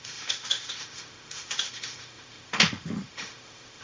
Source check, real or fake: fake